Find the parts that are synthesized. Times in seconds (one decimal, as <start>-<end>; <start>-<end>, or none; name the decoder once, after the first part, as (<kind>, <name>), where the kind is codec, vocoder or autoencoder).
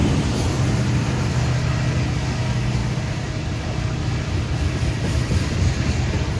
0.0-1.3 (vocoder, BigVGAN v2)